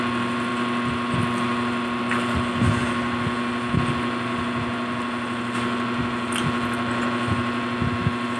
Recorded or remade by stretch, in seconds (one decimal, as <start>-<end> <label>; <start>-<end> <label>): 0.0-8.4 recorded